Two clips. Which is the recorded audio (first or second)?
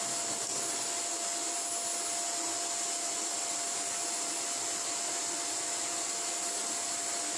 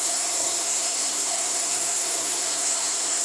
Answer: first